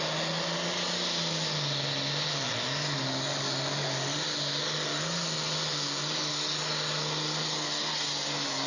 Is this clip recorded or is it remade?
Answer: recorded